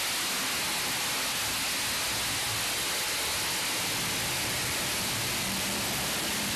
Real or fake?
real